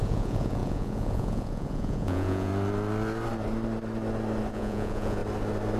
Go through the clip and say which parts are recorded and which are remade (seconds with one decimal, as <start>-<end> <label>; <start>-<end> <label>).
0.0-2.5 remade; 2.5-4.5 recorded; 4.5-5.2 remade; 5.2-5.8 recorded